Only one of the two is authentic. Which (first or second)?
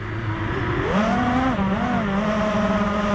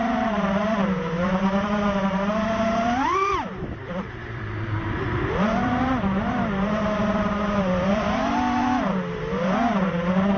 first